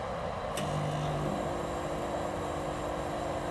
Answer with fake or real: real